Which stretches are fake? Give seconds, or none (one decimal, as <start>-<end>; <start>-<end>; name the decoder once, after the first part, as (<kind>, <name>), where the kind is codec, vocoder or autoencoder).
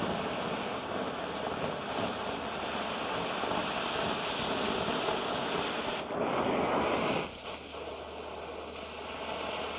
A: none